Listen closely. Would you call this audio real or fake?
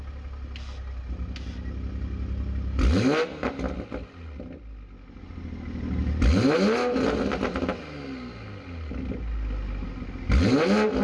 real